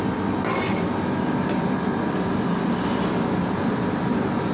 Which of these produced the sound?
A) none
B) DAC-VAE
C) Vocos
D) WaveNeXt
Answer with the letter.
A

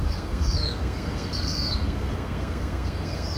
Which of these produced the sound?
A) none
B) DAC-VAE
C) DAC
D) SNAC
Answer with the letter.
D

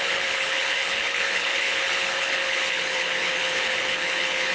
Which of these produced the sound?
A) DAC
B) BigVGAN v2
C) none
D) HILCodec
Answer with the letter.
D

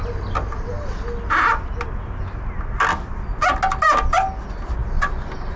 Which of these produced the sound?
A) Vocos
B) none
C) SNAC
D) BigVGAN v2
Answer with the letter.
B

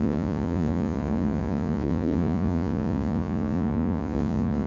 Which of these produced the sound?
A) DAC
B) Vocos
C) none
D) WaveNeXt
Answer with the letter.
B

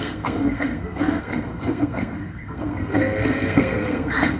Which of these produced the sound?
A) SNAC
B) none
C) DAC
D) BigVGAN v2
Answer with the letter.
A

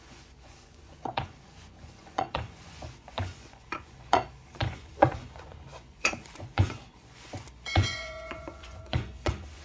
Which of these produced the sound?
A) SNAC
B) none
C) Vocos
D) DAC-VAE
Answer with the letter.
C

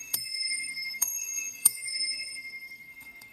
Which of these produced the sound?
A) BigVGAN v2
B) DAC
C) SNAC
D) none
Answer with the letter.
C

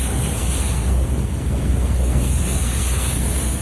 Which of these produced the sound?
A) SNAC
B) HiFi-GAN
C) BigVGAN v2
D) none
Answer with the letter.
A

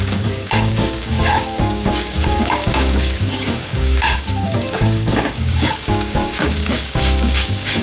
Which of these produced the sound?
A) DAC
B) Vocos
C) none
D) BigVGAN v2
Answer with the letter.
A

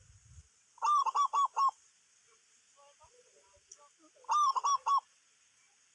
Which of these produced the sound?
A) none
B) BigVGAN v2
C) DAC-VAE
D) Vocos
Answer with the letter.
A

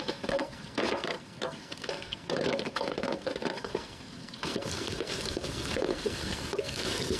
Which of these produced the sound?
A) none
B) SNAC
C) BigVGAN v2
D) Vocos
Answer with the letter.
B